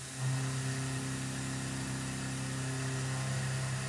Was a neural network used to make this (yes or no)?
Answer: no